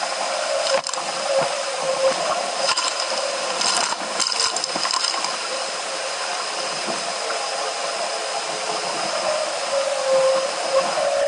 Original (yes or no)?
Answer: yes